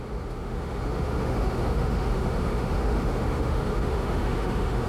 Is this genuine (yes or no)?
no